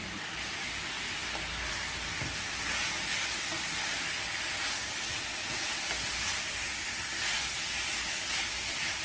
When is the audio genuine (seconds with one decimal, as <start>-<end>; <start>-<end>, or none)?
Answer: 0.0-9.0